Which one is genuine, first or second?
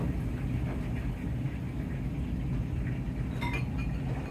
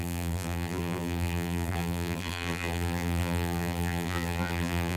first